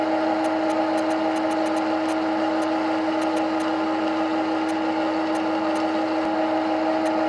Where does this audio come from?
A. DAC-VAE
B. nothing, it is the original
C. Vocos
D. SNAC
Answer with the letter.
B